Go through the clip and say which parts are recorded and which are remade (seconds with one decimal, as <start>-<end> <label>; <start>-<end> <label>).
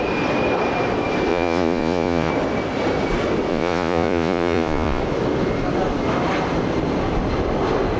0.0-1.3 recorded; 1.3-2.3 remade; 2.3-3.5 recorded; 3.5-5.0 remade; 5.0-8.0 recorded